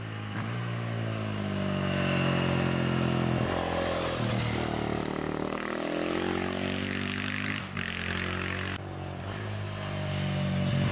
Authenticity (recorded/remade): recorded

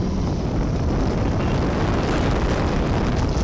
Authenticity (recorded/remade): recorded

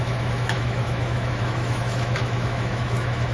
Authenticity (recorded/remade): remade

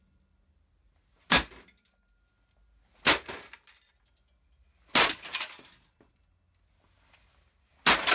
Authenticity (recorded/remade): recorded